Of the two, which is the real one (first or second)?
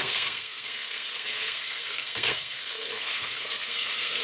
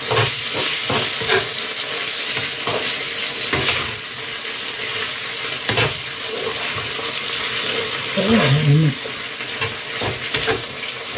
second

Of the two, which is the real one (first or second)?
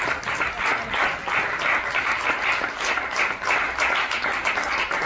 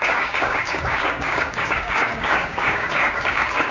first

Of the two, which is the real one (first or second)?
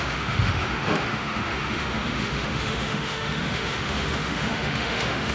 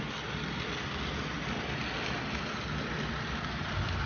second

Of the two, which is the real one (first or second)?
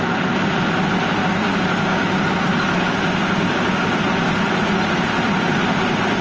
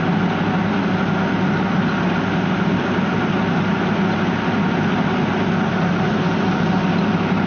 second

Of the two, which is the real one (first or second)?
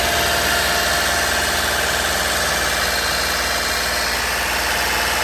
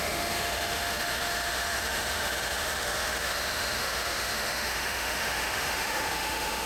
first